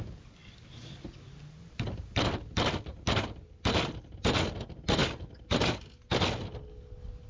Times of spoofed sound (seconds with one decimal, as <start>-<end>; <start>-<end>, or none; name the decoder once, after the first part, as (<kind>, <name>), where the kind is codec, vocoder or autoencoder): none